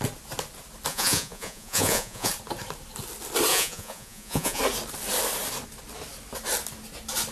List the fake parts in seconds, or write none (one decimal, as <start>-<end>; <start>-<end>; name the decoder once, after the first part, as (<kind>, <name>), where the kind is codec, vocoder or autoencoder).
0.9-2.3 (vocoder, Vocos); 3.5-4.6